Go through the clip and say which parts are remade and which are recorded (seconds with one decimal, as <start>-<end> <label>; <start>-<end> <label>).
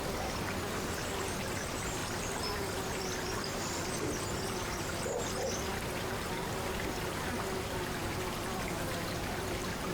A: 0.0-2.0 recorded; 2.0-2.6 remade; 2.6-9.9 recorded